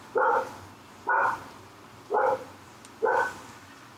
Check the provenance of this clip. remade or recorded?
recorded